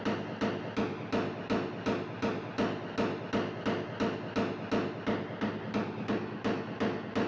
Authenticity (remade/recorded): recorded